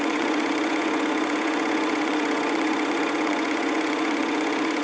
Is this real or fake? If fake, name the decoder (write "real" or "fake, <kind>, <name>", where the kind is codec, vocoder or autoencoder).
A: fake, vocoder, Vocos